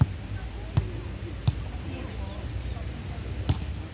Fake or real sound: real